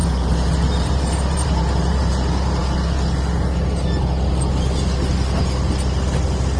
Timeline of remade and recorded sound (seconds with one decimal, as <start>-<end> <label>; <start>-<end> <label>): 0.0-2.1 remade; 2.1-6.6 recorded